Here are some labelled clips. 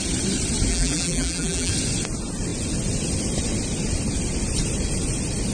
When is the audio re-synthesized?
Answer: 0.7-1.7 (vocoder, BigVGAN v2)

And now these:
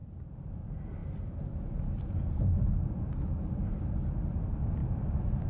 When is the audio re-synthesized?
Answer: none